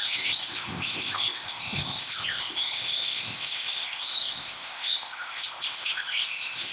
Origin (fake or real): fake